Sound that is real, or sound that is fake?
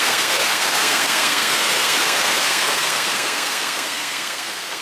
fake